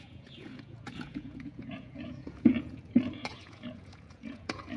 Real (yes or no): no